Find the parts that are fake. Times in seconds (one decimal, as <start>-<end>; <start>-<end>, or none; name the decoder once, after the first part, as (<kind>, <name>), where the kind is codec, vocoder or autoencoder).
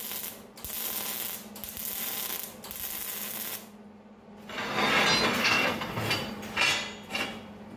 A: 5.4-6.0 (codec, SNAC)